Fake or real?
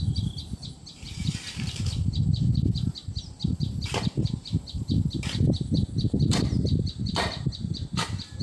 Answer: real